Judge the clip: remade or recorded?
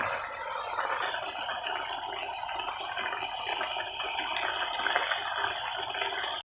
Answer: recorded